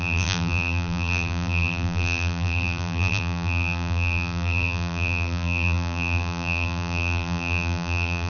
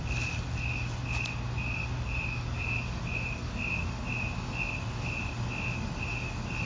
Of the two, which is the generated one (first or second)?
first